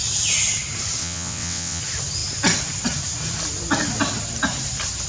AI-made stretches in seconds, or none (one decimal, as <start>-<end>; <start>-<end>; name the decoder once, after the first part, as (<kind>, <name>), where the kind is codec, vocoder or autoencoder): 1.0-1.8 (vocoder, WaveNeXt)